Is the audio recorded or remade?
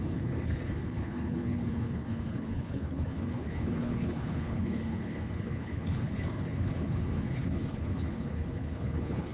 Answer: remade